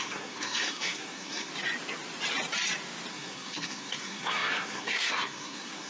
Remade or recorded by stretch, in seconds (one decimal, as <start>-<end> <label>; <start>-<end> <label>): 0.0-1.5 remade; 1.5-3.1 recorded; 3.1-5.9 remade